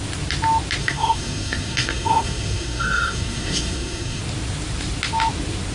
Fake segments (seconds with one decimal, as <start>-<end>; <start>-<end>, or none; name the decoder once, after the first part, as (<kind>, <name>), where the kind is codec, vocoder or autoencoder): 0.8-4.2 (codec, SNAC)